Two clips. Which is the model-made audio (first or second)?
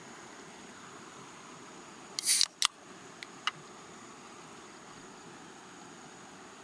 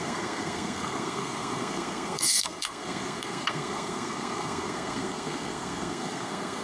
second